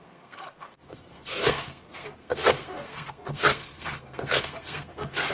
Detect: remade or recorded remade